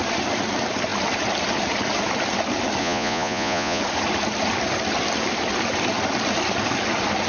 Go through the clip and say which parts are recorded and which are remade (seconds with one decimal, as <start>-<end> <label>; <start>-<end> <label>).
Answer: 0.0-2.8 recorded; 2.8-3.8 remade; 3.8-7.3 recorded